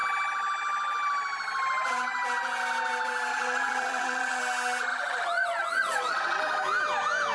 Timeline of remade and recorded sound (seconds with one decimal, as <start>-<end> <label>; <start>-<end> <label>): 0.0-3.3 recorded; 3.3-4.4 remade; 4.4-4.9 recorded; 4.9-6.4 remade; 6.4-7.3 recorded